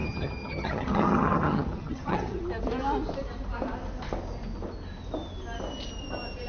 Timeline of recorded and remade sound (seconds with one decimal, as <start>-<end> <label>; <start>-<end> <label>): 0.0-2.4 remade; 2.4-6.5 recorded